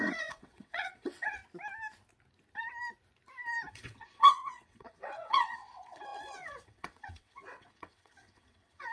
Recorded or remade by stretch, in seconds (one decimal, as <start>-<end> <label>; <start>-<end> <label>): 0.0-1.4 remade; 1.4-3.7 recorded; 3.7-8.9 remade